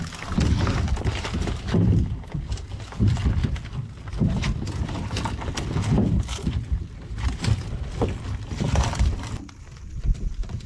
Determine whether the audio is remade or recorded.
recorded